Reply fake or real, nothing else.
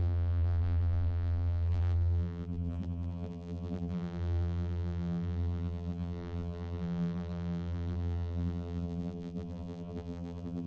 fake